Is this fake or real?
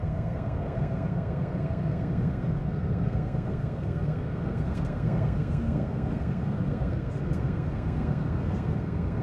fake